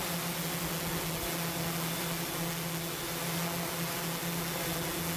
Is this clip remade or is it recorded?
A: recorded